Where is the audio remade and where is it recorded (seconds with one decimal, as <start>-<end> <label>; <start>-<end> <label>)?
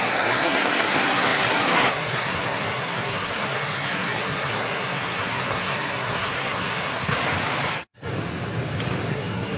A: 0.0-7.2 remade; 7.2-7.7 recorded; 7.7-8.1 remade; 8.1-9.1 recorded; 9.1-9.6 remade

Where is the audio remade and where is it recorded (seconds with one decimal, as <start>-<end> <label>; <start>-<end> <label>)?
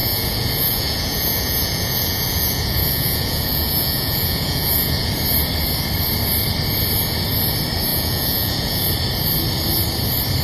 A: 0.0-5.1 remade; 5.1-7.9 recorded; 7.9-8.9 remade; 8.9-10.4 recorded